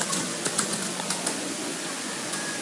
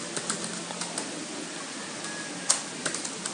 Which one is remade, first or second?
first